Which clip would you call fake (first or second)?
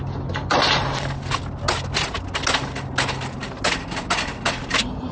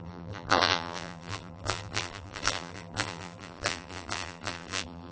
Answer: second